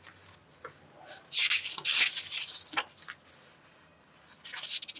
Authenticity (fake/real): real